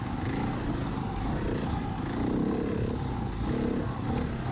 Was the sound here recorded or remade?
recorded